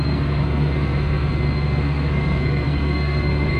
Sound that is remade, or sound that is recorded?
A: remade